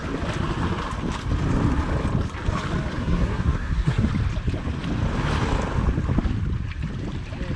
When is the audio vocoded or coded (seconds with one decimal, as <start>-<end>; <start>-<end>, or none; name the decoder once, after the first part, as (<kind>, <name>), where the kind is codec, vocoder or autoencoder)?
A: 2.9-4.1 (codec, SNAC)